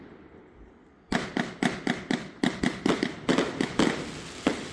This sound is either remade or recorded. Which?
recorded